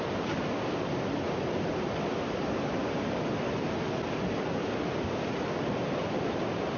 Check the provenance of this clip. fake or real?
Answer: real